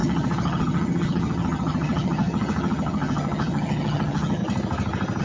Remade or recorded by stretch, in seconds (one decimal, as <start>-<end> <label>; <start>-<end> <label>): 0.0-4.4 remade; 4.4-5.2 recorded